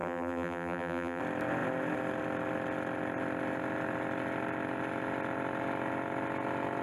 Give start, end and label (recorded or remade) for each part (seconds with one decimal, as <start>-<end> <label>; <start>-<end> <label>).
0.0-1.2 remade; 1.2-6.8 recorded